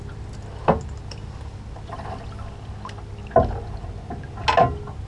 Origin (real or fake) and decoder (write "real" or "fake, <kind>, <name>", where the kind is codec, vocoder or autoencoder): real